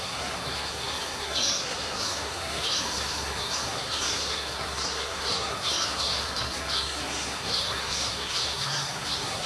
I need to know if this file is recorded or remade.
remade